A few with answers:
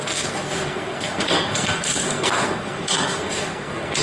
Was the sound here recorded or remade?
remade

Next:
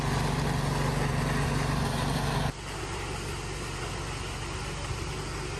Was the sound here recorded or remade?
recorded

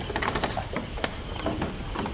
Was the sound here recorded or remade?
recorded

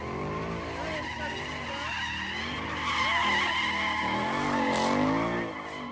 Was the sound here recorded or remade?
recorded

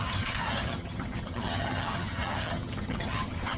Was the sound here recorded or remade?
remade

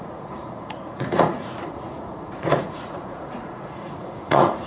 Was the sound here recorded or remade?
remade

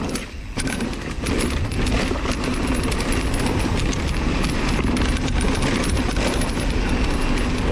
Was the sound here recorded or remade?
recorded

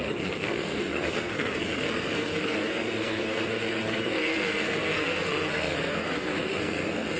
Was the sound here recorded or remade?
remade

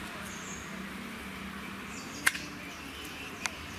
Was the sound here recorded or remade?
recorded